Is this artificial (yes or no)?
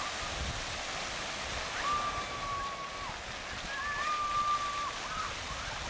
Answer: no